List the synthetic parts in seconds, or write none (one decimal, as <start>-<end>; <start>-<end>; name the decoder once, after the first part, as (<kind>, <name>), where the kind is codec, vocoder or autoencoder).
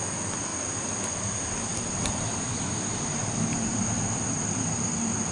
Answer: none